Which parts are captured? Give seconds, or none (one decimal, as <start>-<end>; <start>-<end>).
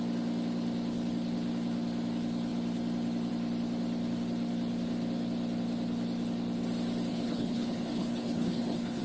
0.0-7.1